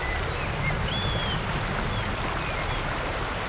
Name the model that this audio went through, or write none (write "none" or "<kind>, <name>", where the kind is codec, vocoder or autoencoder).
none